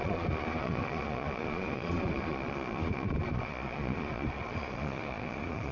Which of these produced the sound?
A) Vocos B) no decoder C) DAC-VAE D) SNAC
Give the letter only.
A